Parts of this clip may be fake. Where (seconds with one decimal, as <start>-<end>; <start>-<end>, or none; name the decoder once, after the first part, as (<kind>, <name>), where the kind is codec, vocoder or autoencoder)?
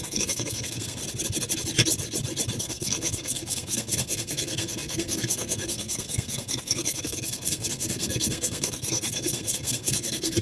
0.0-1.0 (codec, SNAC); 2.6-10.4